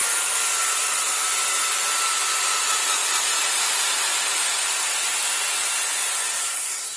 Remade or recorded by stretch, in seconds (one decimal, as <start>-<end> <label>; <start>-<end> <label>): 0.0-6.4 recorded; 6.4-7.0 remade